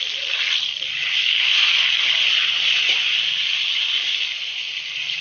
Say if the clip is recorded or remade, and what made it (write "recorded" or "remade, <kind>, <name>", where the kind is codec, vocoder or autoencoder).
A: recorded